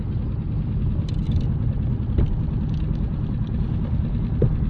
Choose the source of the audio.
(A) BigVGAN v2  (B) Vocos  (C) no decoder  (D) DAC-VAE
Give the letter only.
C